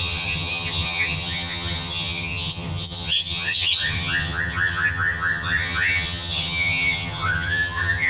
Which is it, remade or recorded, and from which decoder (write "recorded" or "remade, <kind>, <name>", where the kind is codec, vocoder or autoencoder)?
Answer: remade, vocoder, HiFi-GAN